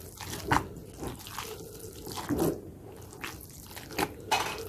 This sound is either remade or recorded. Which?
recorded